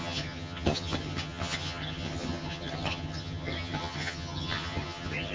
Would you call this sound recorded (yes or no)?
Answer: no